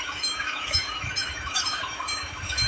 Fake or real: fake